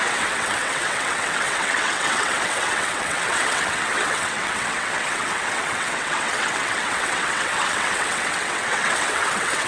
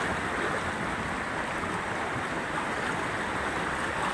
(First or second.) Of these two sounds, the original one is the second